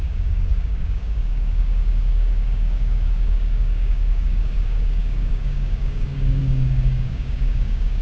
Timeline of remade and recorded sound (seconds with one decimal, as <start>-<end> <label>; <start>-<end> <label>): 0.0-8.0 remade